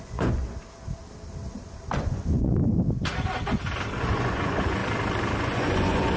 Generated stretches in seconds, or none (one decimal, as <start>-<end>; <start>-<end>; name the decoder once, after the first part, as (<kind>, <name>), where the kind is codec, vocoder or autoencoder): 0.0-0.4 (vocoder, Vocos); 2.0-2.6; 4.0-4.8; 5.4-6.2